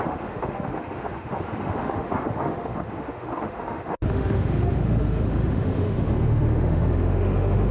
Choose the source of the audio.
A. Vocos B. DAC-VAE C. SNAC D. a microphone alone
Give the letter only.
B